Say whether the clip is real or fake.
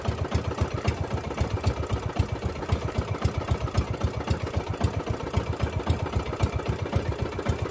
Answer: real